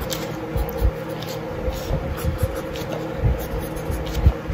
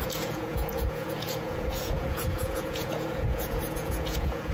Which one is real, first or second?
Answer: first